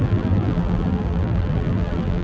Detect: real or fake fake